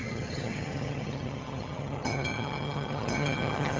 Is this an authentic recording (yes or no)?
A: no